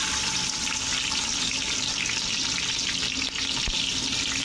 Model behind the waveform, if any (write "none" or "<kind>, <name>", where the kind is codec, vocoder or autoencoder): none